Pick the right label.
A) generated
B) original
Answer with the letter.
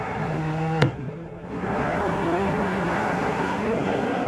A